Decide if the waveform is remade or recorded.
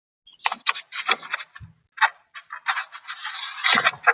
recorded